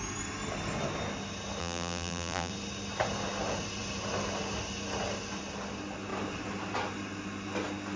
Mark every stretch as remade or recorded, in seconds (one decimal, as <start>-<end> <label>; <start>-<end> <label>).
0.0-1.6 recorded; 1.6-2.5 remade; 2.5-8.0 recorded